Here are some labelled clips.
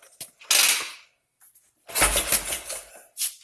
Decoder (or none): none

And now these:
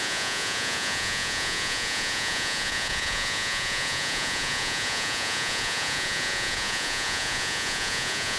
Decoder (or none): vocoder, Vocos